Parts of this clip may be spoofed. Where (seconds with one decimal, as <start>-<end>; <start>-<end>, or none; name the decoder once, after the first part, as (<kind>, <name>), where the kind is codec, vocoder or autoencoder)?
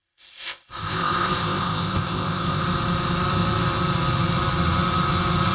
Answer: 0.0-2.6 (codec, ZipCodec)